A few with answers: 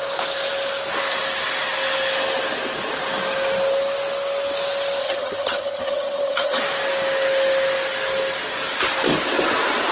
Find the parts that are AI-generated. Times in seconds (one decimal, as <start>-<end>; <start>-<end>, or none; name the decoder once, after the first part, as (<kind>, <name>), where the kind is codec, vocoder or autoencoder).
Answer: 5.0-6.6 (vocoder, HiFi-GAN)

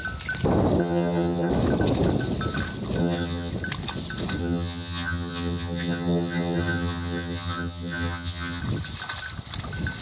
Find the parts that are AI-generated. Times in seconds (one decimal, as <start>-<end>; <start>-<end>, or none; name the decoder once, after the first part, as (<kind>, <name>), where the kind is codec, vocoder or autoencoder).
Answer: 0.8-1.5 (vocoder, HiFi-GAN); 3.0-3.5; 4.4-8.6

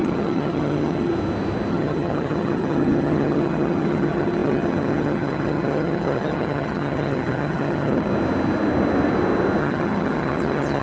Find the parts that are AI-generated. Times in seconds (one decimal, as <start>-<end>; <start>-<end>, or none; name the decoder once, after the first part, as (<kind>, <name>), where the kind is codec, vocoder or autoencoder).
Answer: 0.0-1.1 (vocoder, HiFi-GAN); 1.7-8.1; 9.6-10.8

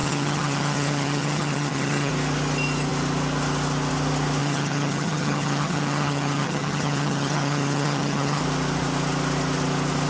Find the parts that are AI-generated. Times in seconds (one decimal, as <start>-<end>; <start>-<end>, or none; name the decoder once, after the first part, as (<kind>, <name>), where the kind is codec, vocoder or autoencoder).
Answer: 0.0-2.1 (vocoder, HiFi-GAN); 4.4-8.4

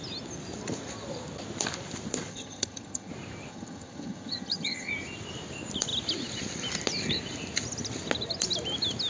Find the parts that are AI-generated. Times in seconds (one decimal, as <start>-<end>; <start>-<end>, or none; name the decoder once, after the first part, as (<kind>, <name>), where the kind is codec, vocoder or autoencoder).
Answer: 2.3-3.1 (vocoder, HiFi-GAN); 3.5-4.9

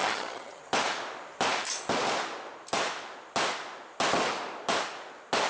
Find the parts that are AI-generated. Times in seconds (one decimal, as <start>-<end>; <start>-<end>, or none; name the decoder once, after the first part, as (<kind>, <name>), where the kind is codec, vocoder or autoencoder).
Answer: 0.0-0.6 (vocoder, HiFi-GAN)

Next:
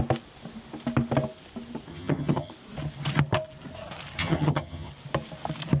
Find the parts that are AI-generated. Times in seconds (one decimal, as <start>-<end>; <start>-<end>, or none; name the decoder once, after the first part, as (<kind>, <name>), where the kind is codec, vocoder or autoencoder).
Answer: 1.9-2.5 (vocoder, HiFi-GAN); 4.2-4.9

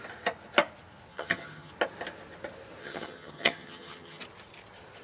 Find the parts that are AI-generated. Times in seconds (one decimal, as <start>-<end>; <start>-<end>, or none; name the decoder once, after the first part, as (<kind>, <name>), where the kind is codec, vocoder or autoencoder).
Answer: 1.1-1.7 (vocoder, HiFi-GAN); 2.8-4.2